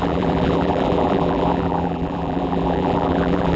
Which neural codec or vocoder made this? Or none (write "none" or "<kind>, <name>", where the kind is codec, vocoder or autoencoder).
vocoder, BigVGAN v2